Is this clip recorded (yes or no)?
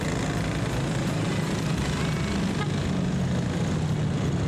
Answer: yes